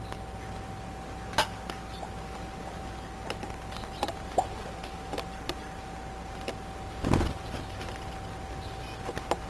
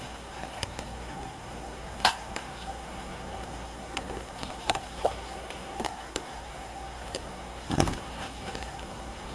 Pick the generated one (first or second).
second